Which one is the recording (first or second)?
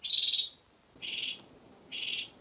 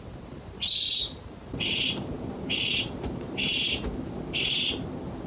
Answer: first